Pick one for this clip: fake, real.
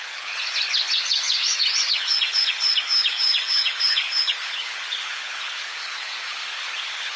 fake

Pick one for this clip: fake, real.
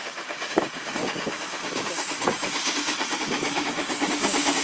fake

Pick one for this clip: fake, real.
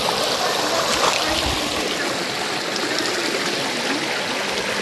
real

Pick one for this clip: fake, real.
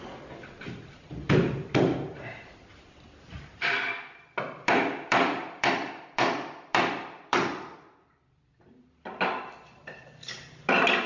fake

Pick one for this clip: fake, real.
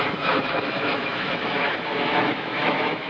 fake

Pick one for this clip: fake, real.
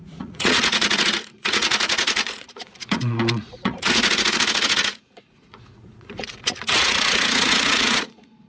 fake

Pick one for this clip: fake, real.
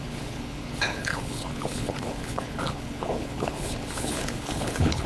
fake